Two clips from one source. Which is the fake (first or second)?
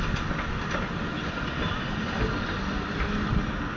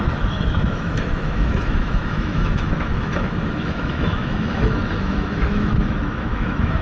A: second